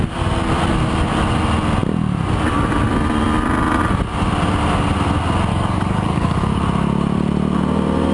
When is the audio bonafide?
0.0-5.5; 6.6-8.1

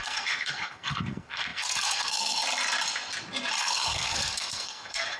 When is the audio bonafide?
2.4-3.6

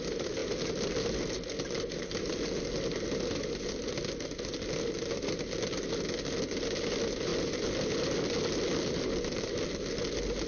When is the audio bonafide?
0.0-10.5

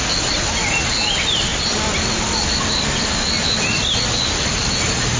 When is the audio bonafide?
0.0-5.2

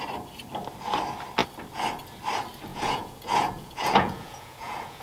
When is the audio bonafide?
0.0-2.7

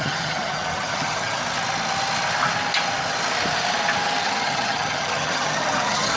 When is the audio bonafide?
1.4-4.2

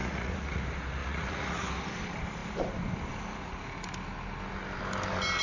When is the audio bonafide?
0.6-1.0; 1.6-5.4